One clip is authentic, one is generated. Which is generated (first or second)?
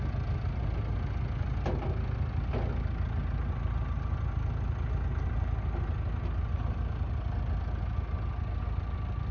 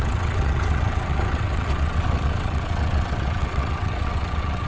second